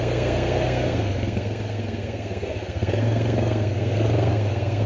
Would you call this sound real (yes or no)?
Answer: no